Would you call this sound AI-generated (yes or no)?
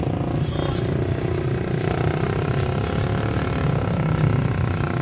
no